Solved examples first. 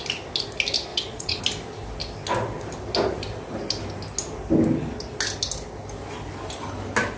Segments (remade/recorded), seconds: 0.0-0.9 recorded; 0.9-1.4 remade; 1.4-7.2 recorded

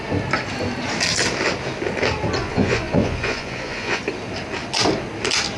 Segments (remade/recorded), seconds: 0.0-2.4 recorded; 2.4-4.0 remade; 4.0-5.6 recorded

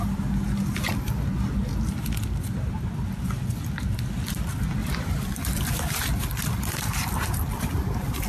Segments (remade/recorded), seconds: 0.0-0.9 recorded; 0.9-1.5 remade; 1.5-4.8 recorded; 4.8-8.3 remade

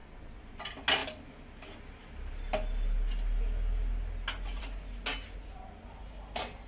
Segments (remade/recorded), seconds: 0.0-6.7 recorded

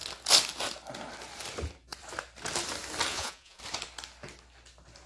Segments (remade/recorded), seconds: 0.0-3.1 recorded; 3.1-3.6 remade; 3.6-5.1 recorded

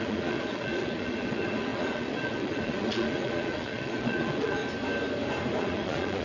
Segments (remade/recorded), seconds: 0.0-4.6 remade; 4.6-5.6 recorded; 5.6-6.2 remade

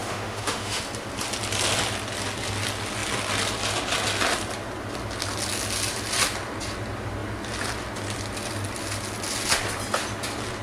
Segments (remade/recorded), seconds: 0.0-0.8 remade; 0.8-10.6 recorded

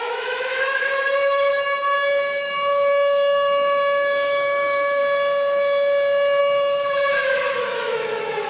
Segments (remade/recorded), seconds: 0.0-5.0 remade; 5.0-6.4 recorded; 6.4-8.5 remade